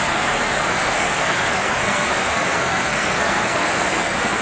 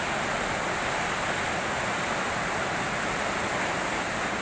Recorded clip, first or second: second